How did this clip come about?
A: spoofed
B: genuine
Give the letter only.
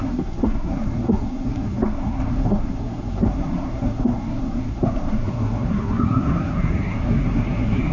A